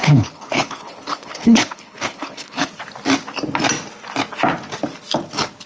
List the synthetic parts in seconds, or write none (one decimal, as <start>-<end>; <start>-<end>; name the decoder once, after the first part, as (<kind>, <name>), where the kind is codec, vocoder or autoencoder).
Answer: 0.0-2.7 (codec, HILCodec)